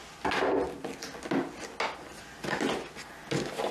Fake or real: real